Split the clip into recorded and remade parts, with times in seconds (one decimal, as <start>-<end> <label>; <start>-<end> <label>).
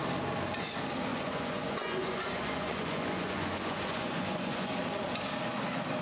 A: 0.0-1.1 recorded; 1.1-4.7 remade; 4.7-6.0 recorded